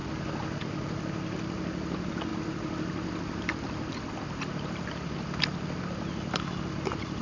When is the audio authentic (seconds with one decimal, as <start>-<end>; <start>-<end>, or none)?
0.0-7.2

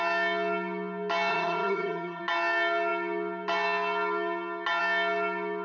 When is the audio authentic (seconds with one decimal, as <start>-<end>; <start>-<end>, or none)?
0.0-1.3; 2.2-5.6